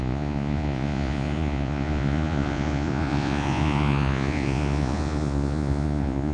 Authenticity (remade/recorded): remade